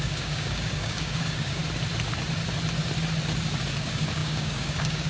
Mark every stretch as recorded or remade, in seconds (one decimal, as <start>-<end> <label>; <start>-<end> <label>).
0.0-1.6 remade; 1.6-3.8 recorded; 3.8-5.1 remade